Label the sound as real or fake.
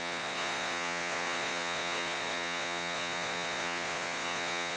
fake